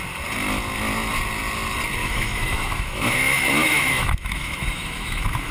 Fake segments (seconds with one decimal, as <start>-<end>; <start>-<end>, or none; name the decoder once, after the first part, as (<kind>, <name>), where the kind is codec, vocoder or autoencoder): 2.0-5.5 (autoencoder, DAC-VAE)